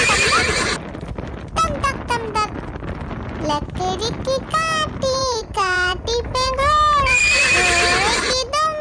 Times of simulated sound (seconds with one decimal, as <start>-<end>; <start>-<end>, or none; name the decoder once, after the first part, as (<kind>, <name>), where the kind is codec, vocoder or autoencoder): 5.2-7.2 (vocoder, BigVGAN v2)